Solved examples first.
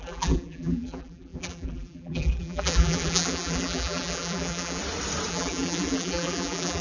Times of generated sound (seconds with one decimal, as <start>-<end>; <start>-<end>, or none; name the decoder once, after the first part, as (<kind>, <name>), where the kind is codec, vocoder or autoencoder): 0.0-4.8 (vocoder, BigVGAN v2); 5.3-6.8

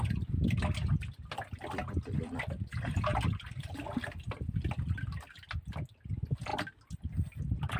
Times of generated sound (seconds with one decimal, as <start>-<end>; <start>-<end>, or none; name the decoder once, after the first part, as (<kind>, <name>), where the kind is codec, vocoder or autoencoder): none

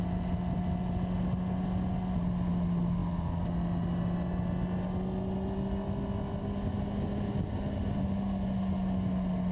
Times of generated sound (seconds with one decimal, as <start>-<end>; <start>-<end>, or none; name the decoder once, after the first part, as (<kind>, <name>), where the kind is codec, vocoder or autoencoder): none

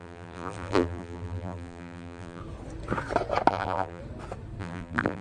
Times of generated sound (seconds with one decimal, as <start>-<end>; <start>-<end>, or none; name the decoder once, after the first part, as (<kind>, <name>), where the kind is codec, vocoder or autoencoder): 0.0-2.4 (vocoder, BigVGAN v2); 3.5-4.0; 4.6-5.2

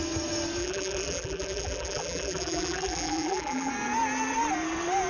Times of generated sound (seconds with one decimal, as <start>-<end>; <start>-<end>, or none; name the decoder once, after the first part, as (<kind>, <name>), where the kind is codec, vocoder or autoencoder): 0.6-3.7 (vocoder, BigVGAN v2)

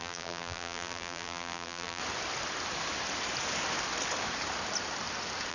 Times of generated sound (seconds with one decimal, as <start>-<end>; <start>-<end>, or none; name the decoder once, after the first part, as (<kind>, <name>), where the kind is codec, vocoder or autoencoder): 0.0-2.0 (vocoder, BigVGAN v2)

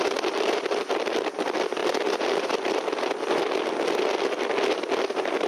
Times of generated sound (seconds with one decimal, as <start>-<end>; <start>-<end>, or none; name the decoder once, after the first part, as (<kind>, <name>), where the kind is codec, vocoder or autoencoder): 0.0-1.8 (vocoder, BigVGAN v2); 2.4-5.5

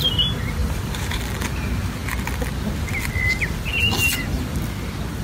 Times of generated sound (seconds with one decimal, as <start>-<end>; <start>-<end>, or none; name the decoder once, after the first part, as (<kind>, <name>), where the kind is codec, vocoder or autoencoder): 0.6-1.2 (vocoder, BigVGAN v2)